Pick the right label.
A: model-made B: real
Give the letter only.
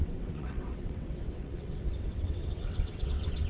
A